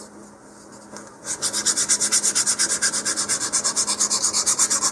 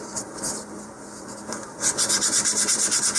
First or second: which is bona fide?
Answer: first